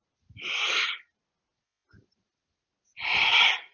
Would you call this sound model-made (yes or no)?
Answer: no